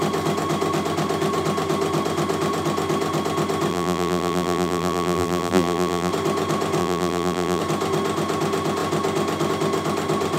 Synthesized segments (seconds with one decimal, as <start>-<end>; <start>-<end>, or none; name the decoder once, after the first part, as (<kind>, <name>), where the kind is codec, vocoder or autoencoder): 3.7-6.1 (vocoder, BigVGAN v2); 6.8-7.6